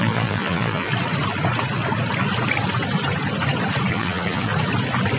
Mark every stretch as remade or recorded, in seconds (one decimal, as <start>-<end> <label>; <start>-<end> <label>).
0.0-0.9 remade; 0.9-3.9 recorded; 3.9-4.5 remade; 4.5-5.2 recorded